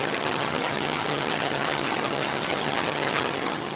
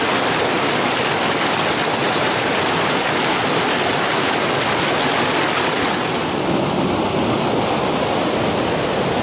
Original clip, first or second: second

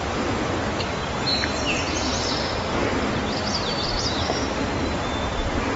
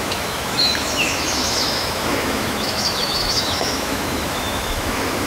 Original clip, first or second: first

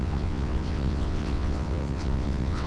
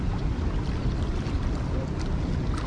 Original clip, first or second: second